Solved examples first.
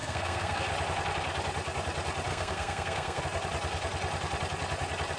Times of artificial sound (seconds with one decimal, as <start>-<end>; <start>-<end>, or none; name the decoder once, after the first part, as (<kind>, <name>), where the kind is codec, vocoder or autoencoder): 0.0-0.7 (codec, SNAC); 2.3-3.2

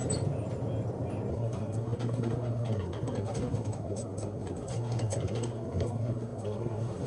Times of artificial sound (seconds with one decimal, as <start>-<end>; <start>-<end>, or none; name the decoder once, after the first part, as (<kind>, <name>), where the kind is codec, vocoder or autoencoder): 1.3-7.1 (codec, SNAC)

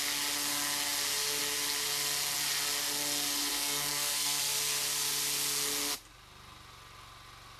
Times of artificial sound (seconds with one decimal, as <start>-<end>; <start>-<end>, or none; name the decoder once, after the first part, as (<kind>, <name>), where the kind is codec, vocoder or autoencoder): 3.5-4.4 (codec, SNAC)

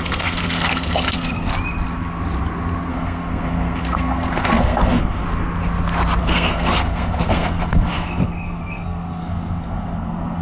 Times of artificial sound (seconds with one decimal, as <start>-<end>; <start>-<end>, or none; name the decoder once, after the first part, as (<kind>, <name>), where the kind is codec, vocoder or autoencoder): 0.0-1.5 (codec, SNAC); 2.9-5.2; 6.2-10.4

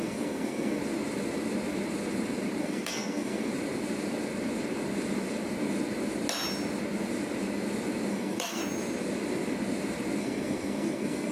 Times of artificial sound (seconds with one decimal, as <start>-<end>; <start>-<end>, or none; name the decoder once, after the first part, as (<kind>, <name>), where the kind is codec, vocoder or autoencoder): 0.0-0.8 (codec, SNAC); 2.6-3.5; 8.1-8.6; 10.2-11.3

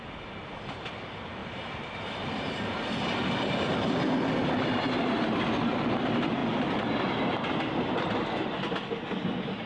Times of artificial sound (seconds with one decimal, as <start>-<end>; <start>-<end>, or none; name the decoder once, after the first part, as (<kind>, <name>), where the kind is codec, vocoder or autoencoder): none